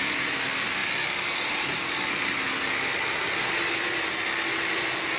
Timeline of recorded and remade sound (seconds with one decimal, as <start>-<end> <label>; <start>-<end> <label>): 0.0-5.2 recorded